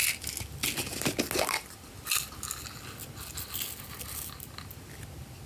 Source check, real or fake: real